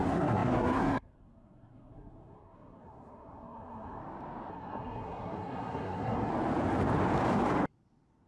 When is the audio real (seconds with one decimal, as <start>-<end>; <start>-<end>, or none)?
4.0-4.5; 6.3-8.3